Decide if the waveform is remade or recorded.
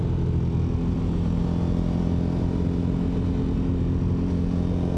recorded